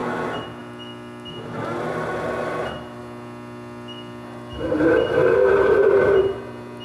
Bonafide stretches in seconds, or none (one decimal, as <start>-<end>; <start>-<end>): 0.0-6.8